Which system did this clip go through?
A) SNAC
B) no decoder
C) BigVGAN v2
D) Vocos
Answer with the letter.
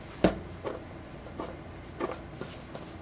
B